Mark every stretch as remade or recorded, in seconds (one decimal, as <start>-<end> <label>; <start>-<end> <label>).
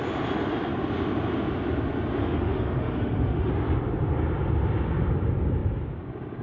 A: 0.0-2.2 recorded; 2.2-3.5 remade; 3.5-6.4 recorded